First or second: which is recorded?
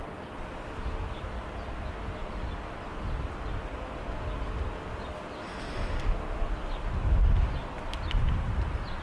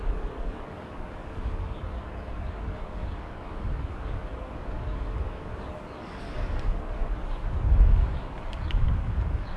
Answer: first